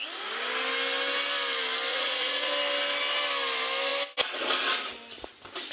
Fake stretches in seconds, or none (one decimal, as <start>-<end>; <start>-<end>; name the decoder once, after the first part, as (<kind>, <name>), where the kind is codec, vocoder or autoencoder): 1.9-2.5 (vocoder, Vocos)